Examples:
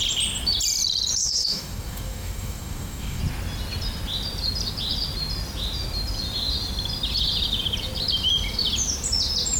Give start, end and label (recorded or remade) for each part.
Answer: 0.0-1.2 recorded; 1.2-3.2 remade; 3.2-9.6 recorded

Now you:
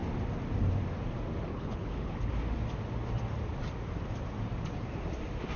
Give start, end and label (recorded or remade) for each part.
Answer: 0.0-1.5 recorded; 1.5-2.3 remade; 2.3-5.6 recorded

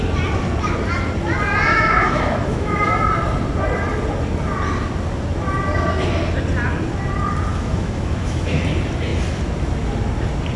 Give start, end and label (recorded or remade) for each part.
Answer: 0.0-1.7 recorded; 1.7-2.8 remade; 2.8-7.5 recorded; 7.5-8.6 remade; 8.6-10.6 recorded